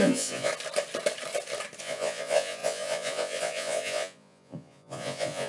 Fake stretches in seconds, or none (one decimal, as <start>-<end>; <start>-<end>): 0.0-0.5; 1.8-5.5